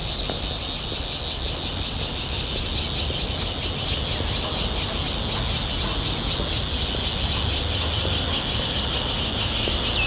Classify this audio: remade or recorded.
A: recorded